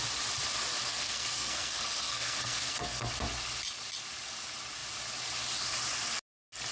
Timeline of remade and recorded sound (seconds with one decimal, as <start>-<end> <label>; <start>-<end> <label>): 0.0-0.9 recorded; 0.9-3.1 remade; 3.1-6.7 recorded